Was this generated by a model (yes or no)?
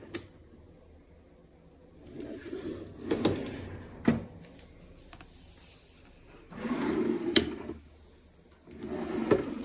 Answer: no